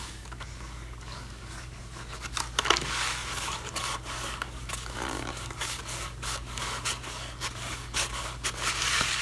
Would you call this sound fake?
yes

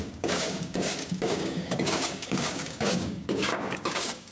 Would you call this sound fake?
yes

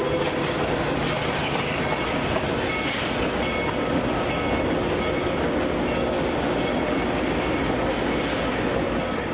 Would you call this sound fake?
no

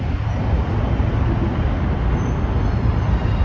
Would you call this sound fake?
no